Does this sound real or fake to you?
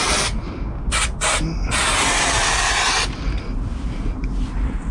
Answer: real